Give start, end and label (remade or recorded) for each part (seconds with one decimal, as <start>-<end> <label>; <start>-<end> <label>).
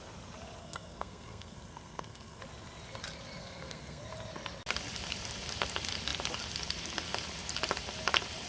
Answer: 0.0-0.6 recorded; 0.6-2.4 remade; 2.4-3.4 recorded; 3.4-4.0 remade; 4.0-8.5 recorded